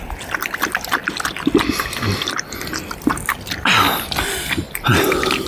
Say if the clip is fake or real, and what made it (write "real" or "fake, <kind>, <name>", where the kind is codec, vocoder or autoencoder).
real